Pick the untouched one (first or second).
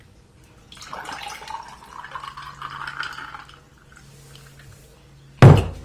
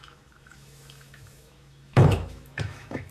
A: first